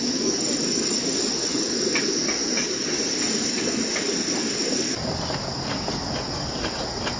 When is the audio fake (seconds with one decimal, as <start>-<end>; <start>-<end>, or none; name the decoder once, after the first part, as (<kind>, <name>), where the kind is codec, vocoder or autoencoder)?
none